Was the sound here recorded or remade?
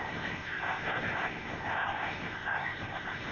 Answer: remade